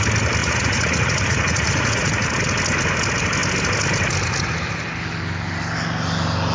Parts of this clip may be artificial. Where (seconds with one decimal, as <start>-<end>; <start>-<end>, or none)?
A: 0.4-2.3